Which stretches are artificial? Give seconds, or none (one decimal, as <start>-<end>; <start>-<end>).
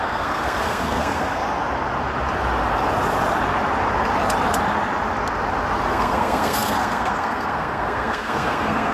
0.0-1.4; 5.9-8.9